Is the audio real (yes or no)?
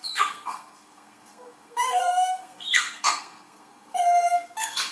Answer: no